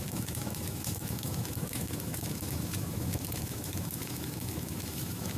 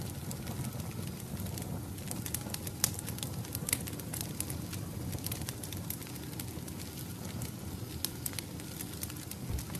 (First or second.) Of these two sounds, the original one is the second